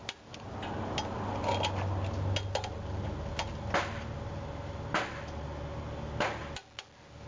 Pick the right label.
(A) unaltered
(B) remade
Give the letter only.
A